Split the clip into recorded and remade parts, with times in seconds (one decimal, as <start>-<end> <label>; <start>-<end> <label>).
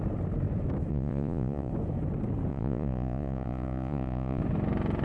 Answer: 0.0-0.9 recorded; 0.9-1.7 remade; 1.7-2.5 recorded; 2.5-4.4 remade; 4.4-5.0 recorded